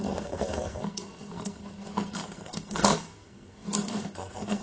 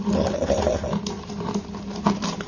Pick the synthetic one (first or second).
first